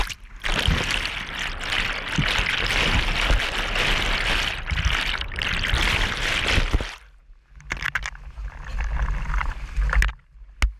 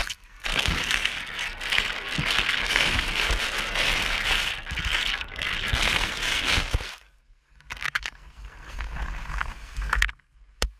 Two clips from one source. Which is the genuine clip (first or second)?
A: first